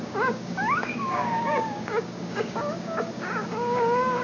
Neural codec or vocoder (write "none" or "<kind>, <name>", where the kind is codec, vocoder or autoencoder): codec, DAC